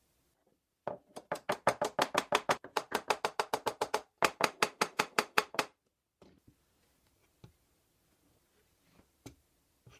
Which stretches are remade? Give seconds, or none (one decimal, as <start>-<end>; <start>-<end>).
none